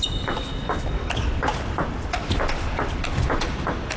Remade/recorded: recorded